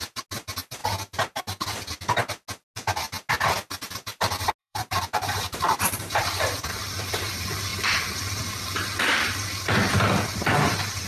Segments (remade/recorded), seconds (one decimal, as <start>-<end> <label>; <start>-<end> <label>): 0.0-4.6 recorded; 4.6-6.2 remade; 6.2-11.1 recorded